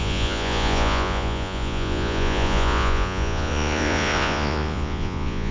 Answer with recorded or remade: remade